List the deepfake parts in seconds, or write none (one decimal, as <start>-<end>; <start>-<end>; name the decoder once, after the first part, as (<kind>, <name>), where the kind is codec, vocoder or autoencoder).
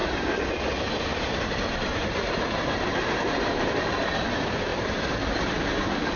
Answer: 0.0-0.5 (vocoder, BigVGAN v2); 1.1-3.8; 4.7-5.2